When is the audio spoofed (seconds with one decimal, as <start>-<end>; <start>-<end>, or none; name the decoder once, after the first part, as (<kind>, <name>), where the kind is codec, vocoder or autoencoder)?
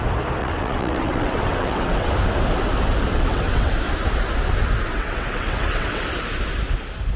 0.4-2.1 (vocoder, WaveNeXt); 3.1-3.7; 4.9-6.0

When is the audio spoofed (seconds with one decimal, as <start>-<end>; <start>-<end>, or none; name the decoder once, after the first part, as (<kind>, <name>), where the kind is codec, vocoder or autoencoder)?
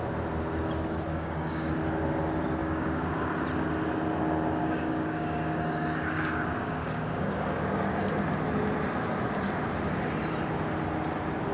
1.1-1.7 (codec, DAC); 2.6-3.2; 4.6-8.1